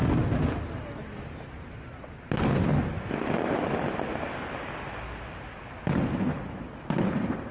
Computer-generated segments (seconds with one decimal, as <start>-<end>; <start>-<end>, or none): none